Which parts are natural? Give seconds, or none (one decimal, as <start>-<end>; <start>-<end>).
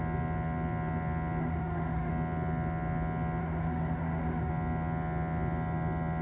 0.0-1.4; 2.1-3.4; 4.5-6.2